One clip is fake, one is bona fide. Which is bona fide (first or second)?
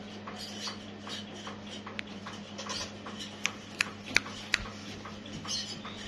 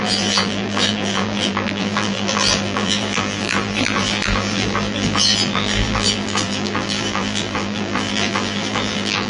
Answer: first